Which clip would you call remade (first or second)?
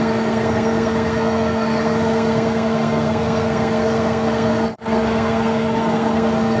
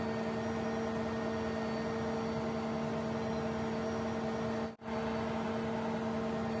first